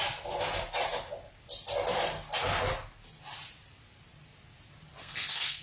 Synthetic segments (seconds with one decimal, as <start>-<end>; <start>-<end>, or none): 5.0-5.6